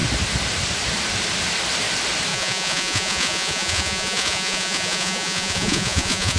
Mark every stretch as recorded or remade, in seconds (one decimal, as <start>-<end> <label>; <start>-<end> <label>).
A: 0.0-2.3 recorded; 2.3-6.4 remade